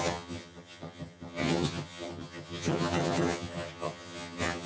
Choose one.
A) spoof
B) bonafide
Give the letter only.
A